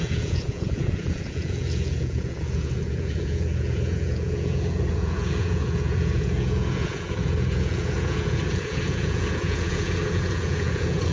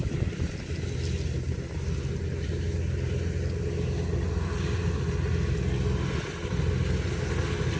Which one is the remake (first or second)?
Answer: first